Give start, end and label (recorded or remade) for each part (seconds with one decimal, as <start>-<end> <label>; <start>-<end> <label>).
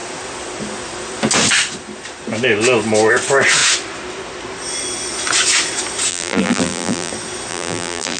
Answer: 0.0-6.1 recorded; 6.1-7.1 remade; 7.1-7.5 recorded; 7.5-8.2 remade